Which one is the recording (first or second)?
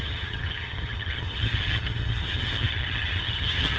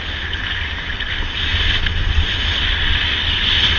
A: second